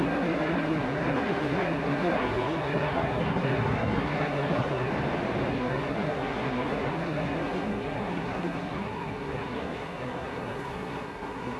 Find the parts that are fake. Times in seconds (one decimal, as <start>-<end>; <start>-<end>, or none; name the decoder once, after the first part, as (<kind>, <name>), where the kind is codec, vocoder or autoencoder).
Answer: 0.0-4.9 (codec, SNAC); 5.5-11.6